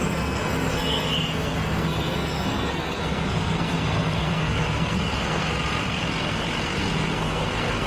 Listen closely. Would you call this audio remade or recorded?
remade